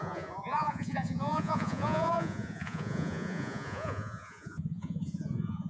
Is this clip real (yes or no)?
no